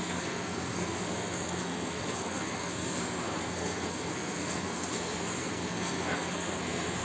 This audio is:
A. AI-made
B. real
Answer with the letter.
A